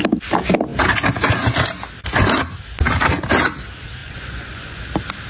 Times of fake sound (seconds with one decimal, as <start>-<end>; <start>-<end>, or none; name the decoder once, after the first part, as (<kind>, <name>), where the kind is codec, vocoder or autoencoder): 4.0-4.8 (vocoder, Vocos)